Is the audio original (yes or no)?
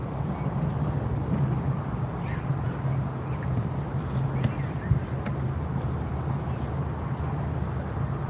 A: yes